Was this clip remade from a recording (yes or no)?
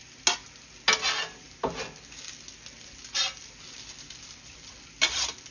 no